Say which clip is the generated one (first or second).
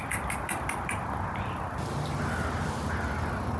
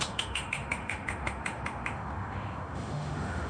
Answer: second